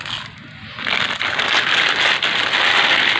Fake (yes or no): no